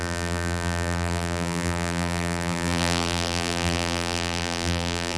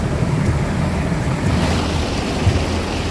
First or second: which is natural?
second